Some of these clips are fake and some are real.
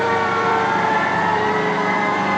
fake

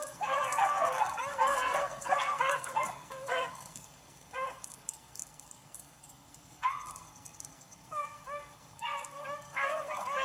fake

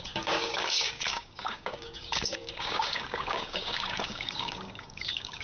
fake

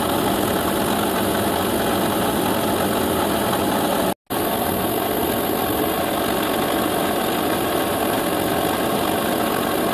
real